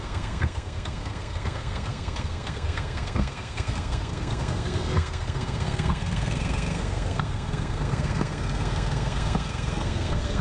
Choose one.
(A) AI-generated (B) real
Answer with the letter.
A